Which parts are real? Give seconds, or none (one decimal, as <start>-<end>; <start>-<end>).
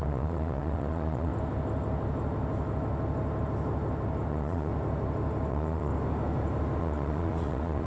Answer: 1.3-4.3; 4.7-5.5; 5.9-6.8